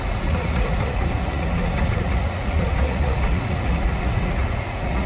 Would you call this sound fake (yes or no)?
yes